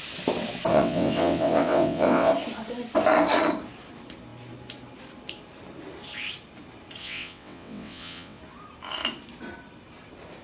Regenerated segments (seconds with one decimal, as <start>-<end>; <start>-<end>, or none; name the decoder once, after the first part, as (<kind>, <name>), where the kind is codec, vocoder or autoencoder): 0.7-2.3 (vocoder, WaveNeXt); 7.0-8.4

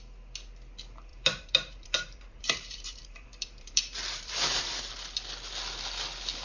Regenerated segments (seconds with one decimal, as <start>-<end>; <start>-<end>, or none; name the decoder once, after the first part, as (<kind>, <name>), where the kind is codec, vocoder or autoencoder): 1.1-4.9 (vocoder, BigVGAN v2)

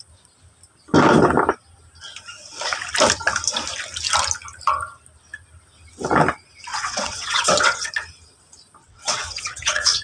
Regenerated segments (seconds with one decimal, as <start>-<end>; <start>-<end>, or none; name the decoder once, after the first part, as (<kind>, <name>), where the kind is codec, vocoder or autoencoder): 6.7-7.9 (vocoder, WaveNeXt); 8.8-10.0

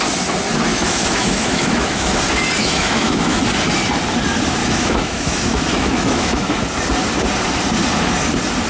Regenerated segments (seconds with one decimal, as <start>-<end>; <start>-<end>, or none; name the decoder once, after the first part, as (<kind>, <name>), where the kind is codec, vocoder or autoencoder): 0.7-2.2 (autoencoder, DAC-VAE); 2.6-3.4; 4.6-6.5